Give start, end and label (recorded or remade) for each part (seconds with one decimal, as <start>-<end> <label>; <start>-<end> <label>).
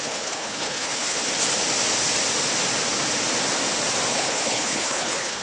0.0-1.2 remade; 1.2-4.1 recorded; 4.1-5.4 remade